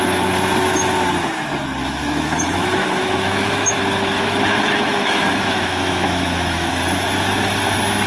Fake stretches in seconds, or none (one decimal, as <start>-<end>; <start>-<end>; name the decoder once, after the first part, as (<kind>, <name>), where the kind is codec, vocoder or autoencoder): 1.8-6.7 (autoencoder, DAC-VAE)